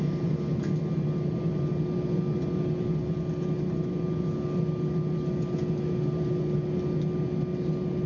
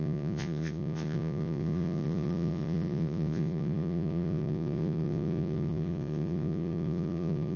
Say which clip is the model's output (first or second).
second